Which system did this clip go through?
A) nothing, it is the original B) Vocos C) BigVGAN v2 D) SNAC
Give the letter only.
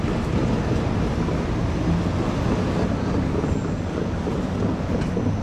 A